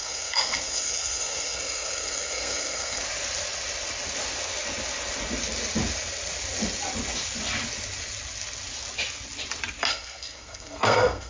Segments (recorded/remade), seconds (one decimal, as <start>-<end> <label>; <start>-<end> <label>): 0.0-3.0 remade; 3.0-9.9 recorded; 9.9-11.3 remade